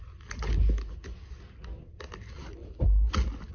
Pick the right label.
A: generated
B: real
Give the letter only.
B